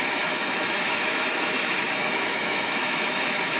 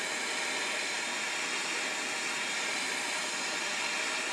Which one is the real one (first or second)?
second